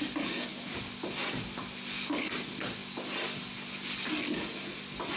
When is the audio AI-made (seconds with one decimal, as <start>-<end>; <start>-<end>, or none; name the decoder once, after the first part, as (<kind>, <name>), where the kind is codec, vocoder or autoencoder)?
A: none

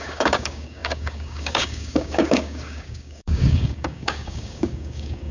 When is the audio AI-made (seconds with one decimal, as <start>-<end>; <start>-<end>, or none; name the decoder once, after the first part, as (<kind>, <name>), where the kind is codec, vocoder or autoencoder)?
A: 0.0-5.3 (codec, DAC)